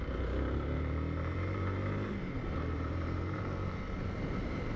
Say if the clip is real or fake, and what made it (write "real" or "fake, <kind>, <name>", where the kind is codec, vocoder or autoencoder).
fake, vocoder, BigVGAN v2